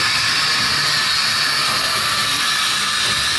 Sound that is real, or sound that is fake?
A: real